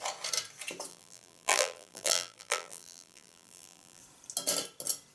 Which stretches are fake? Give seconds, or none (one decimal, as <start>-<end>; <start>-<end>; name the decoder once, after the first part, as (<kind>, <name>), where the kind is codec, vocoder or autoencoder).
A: 0.9-4.0 (vocoder, BigVGAN v2)